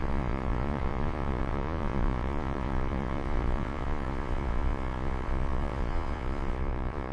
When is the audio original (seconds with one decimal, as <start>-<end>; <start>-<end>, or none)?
none